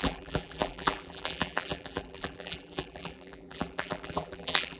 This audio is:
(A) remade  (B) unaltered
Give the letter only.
A